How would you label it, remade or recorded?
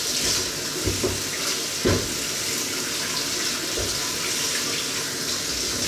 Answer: recorded